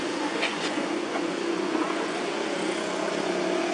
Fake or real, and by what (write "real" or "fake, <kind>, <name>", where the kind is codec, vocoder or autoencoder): fake, vocoder, Vocos